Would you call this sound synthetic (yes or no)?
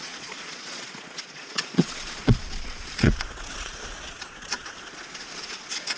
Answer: yes